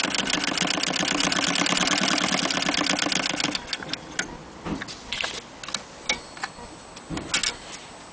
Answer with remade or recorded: recorded